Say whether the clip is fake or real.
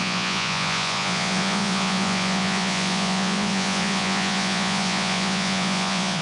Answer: fake